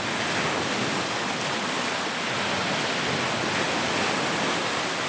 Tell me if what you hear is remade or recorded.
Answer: recorded